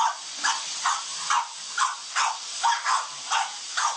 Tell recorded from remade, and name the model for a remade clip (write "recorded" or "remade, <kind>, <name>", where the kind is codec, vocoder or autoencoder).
recorded